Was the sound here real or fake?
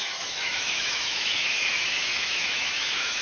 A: fake